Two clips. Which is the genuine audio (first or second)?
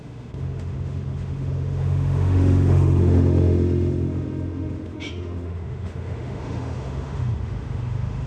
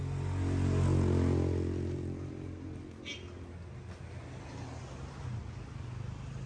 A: second